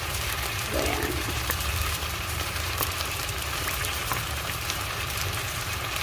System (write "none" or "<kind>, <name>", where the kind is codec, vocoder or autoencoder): vocoder, BigVGAN v2